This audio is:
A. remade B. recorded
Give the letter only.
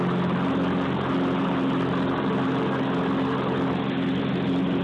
B